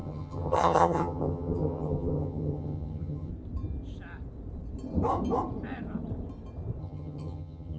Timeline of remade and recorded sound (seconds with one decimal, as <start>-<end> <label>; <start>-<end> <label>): 0.0-3.3 remade; 3.3-6.8 recorded; 6.8-7.8 remade